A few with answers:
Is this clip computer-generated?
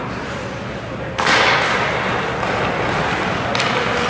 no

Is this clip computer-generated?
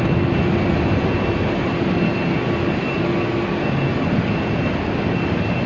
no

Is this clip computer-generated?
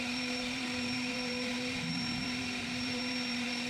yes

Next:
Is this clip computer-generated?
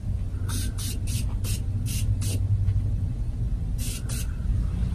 no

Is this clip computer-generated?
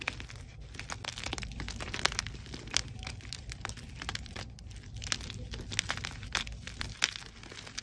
no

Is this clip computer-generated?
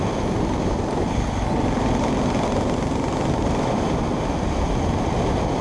no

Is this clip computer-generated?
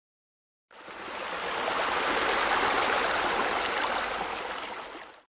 no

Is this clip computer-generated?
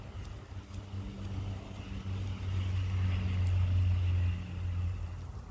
no